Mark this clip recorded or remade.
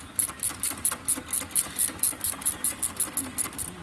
recorded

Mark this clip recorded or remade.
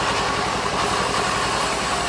recorded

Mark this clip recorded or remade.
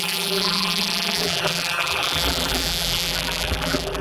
remade